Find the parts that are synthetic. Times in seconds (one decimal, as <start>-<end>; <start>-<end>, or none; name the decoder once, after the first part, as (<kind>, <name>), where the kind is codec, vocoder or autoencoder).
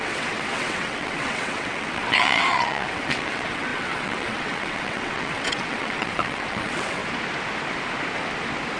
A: 0.0-7.0 (vocoder, WaveNeXt)